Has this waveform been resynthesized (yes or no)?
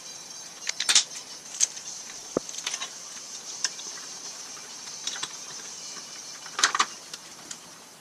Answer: yes